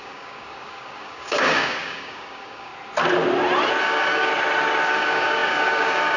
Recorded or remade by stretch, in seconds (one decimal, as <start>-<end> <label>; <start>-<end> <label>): 0.0-2.7 remade; 2.7-3.8 recorded; 3.8-4.3 remade; 4.3-4.9 recorded; 4.9-6.2 remade